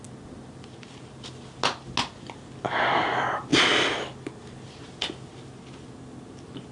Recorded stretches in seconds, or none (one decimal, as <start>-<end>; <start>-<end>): 0.0-6.7